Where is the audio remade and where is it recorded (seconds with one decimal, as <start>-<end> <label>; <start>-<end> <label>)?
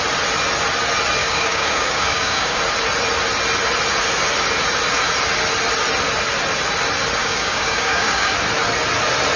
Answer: 0.0-1.2 recorded; 1.2-2.6 remade; 2.6-7.2 recorded; 7.2-8.3 remade; 8.3-9.4 recorded